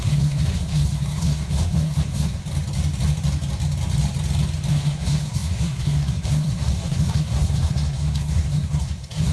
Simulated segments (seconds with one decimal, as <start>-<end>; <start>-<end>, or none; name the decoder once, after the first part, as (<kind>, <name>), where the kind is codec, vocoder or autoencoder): 0.0-2.4 (codec, SNAC); 4.7-9.3